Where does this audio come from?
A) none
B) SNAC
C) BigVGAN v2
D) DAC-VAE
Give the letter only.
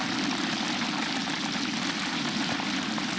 A